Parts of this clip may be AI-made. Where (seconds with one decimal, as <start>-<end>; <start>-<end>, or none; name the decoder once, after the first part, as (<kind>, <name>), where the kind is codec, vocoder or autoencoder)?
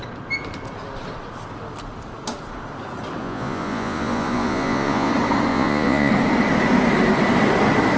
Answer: 3.2-5.1 (vocoder, Vocos); 5.5-6.1